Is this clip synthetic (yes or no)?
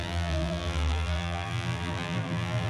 yes